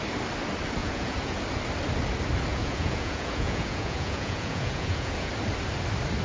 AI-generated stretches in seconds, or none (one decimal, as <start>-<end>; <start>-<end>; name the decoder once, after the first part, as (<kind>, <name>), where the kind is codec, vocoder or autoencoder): 0.8-1.4 (vocoder, Vocos); 2.5-5.3